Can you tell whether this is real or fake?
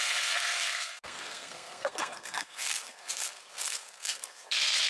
fake